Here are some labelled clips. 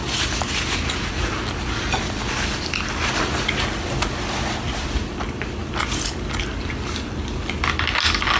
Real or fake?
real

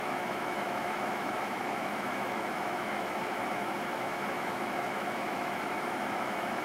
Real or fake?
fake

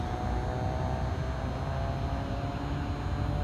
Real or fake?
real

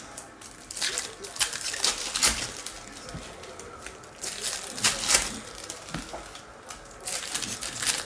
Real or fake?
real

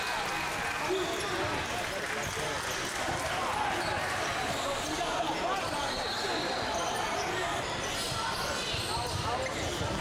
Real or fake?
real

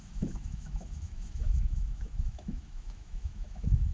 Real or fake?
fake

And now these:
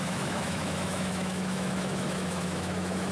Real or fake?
fake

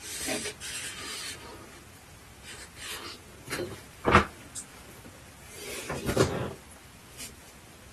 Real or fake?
real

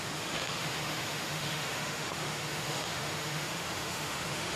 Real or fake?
fake